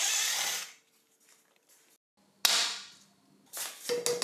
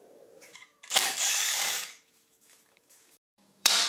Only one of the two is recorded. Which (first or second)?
first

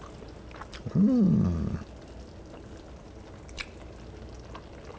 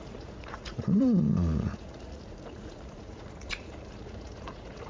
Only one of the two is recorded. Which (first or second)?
first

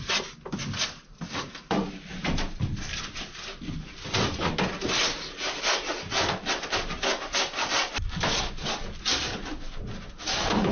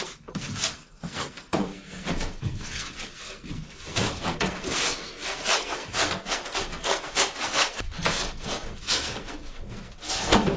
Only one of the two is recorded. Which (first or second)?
first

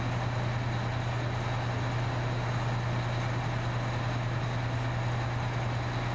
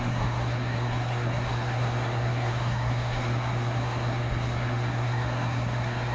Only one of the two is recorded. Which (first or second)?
first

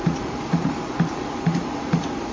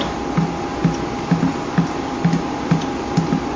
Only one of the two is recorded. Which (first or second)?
second